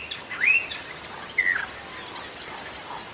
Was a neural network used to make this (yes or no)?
no